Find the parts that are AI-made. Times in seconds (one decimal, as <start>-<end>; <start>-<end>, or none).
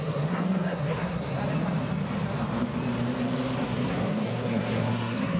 0.0-1.4; 3.6-5.4